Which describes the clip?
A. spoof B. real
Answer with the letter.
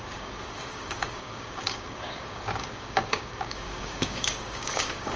A